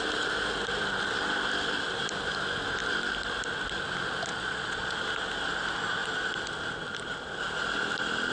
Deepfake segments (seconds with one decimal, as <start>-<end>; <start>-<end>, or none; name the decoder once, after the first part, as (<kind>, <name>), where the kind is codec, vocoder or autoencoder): 4.3-4.9 (vocoder, Vocos)